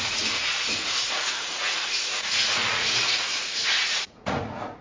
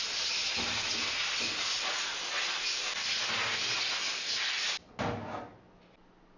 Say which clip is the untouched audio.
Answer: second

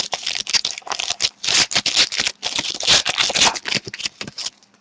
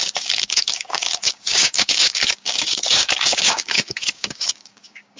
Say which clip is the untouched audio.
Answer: first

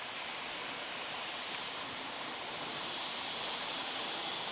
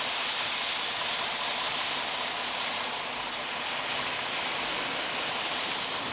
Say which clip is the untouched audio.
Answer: second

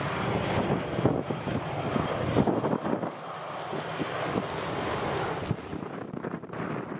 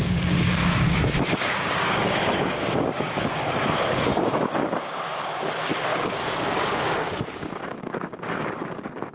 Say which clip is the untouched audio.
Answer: first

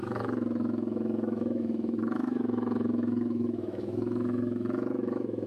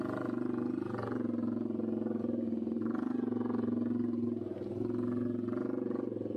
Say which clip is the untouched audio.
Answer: second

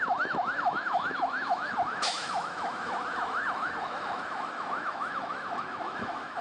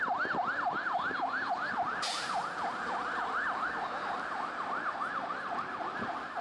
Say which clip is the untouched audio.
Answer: second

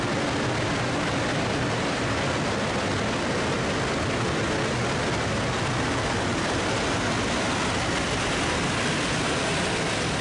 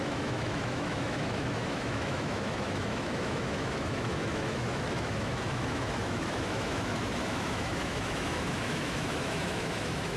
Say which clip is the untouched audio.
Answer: first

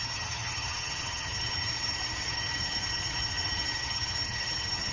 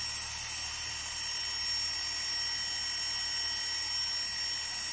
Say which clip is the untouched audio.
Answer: second